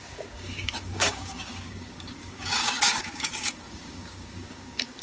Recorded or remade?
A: remade